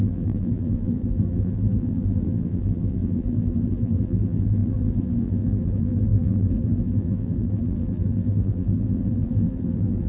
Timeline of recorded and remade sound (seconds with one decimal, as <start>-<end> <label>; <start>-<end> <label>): 0.0-10.1 remade